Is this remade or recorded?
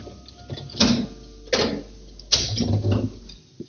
recorded